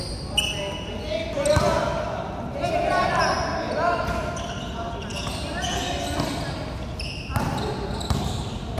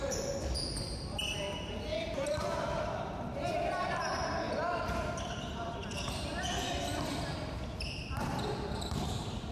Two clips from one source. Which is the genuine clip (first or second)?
first